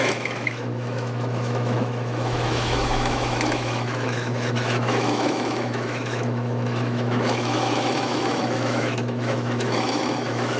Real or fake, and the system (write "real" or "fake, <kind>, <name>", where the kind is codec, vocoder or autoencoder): fake, autoencoder, DAC-VAE